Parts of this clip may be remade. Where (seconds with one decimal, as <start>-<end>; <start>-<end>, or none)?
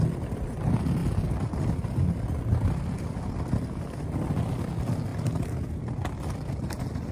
none